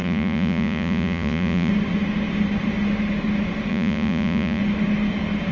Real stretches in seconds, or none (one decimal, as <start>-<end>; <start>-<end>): 1.7-3.7; 4.6-5.5